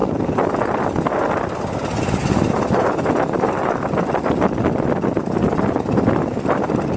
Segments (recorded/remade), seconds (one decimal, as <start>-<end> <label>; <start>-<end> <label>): 0.0-7.0 recorded